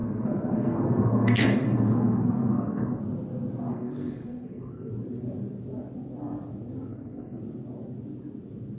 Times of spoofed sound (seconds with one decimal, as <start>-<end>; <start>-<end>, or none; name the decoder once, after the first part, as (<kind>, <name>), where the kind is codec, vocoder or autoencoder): 0.0-3.0 (codec, SNAC); 3.7-4.9; 6.9-7.4